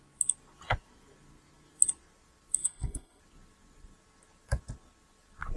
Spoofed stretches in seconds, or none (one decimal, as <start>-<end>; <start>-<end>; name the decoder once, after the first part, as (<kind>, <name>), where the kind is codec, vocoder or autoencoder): 2.6-3.2 (codec, SNAC)